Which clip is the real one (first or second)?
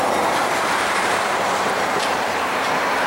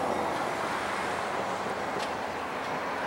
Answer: second